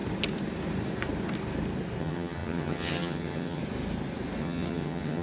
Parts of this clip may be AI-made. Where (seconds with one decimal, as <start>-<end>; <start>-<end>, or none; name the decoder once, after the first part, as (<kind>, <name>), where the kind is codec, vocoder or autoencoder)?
2.0-3.6 (vocoder, HiFi-GAN); 4.4-5.2